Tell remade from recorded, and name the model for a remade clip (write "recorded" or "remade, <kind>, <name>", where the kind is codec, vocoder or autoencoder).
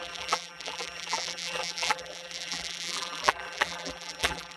remade, vocoder, BigVGAN v2